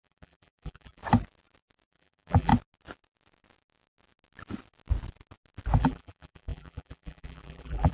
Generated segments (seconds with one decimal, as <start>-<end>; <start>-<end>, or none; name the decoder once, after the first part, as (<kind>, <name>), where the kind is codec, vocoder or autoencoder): 0.0-1.0 (vocoder, BigVGAN v2); 1.9-2.5; 5.8-7.9